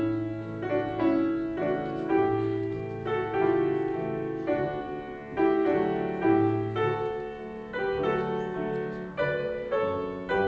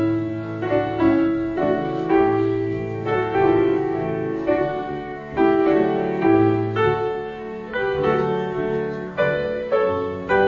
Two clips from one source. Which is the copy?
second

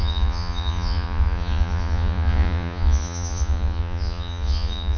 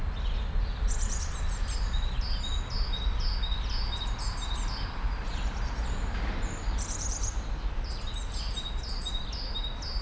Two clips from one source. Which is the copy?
first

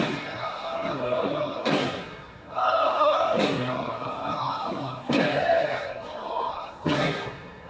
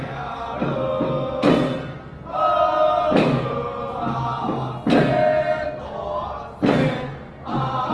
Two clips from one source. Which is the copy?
first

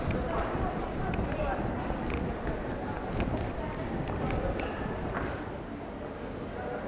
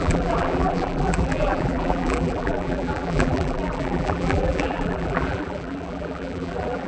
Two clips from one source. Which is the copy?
second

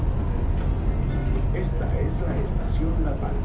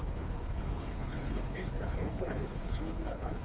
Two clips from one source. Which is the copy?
second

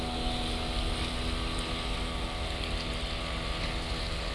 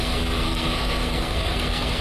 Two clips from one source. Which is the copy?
second